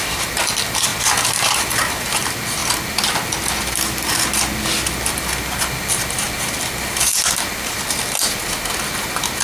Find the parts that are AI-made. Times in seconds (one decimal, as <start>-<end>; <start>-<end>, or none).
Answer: none